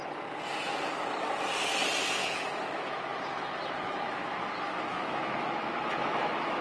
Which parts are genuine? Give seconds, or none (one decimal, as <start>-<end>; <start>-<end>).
0.0-2.2